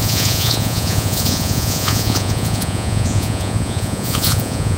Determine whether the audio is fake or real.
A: fake